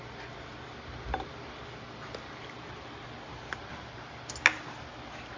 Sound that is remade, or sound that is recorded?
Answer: recorded